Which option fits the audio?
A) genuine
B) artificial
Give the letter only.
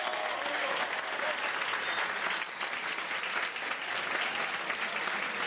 A